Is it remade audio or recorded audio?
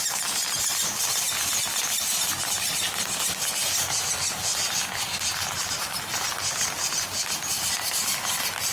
recorded